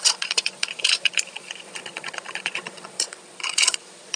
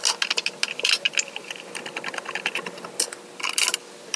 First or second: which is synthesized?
first